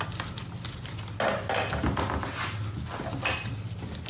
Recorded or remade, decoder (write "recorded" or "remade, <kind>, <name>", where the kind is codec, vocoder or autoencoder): recorded